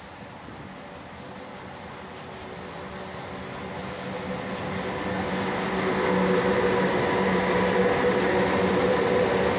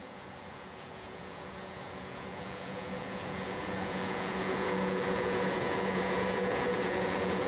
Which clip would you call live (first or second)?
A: first